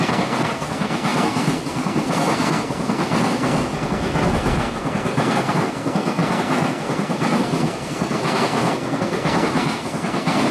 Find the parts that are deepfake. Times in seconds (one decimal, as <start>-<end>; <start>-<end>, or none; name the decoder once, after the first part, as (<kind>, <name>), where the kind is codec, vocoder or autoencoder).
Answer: 0.0-10.5 (codec, SNAC)